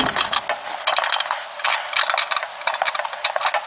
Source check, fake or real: real